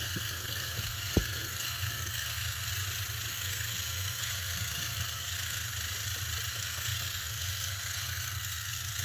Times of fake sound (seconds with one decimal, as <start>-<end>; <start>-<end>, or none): 0.0-2.7; 3.3-5.7; 6.5-9.0